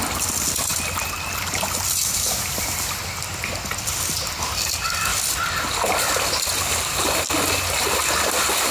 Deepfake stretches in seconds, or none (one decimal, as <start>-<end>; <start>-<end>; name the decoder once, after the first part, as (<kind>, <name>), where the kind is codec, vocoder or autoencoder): 5.1-7.3 (vocoder, BigVGAN v2)